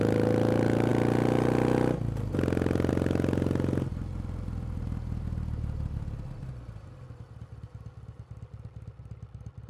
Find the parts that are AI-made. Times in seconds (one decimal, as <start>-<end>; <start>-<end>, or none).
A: none